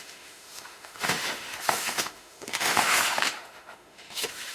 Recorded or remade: remade